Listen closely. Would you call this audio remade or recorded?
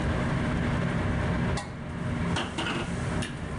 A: recorded